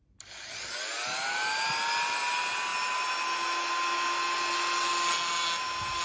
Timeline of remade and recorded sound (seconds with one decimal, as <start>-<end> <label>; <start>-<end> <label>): 0.0-6.0 recorded